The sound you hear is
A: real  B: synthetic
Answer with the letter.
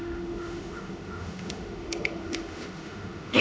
B